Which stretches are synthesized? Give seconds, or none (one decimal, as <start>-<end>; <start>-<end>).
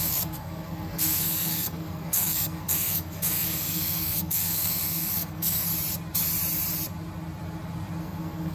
0.0-5.7; 8.0-8.5